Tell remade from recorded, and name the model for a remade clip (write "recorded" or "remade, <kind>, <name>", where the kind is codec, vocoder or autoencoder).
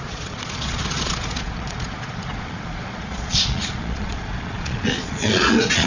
remade, vocoder, Vocos